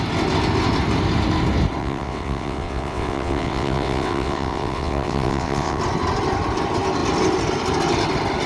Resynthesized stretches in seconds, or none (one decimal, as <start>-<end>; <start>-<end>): 1.8-5.8